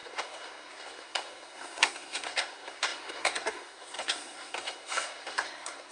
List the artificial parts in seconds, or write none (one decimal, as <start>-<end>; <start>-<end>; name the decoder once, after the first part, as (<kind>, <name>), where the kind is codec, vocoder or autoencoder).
0.0-5.9 (codec, SNAC)